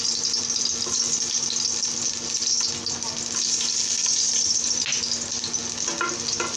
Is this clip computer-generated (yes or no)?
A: no